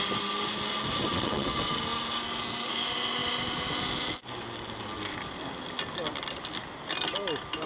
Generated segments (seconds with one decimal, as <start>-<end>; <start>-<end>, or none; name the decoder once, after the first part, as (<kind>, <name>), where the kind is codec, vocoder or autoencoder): 1.1-1.8 (vocoder, WaveNeXt)